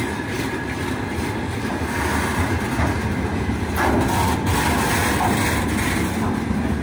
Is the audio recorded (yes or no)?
yes